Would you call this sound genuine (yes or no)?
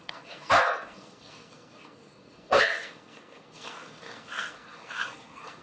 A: no